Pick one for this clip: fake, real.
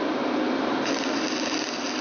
real